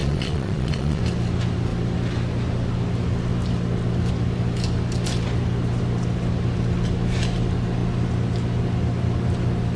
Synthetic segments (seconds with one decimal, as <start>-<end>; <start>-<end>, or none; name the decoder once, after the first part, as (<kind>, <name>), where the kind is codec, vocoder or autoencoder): 0.0-1.0 (vocoder, Vocos)